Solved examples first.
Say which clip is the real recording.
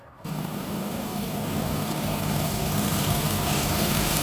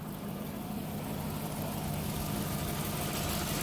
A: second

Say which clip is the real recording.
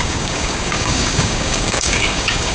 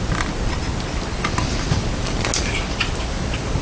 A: second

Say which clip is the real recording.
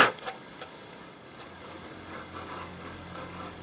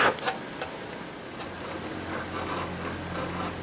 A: second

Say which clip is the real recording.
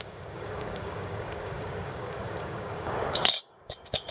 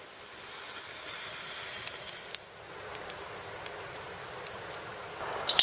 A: second